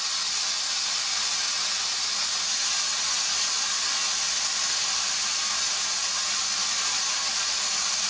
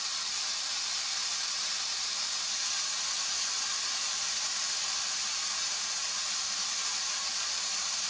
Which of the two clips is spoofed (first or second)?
second